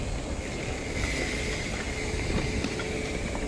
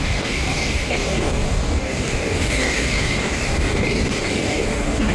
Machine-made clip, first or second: second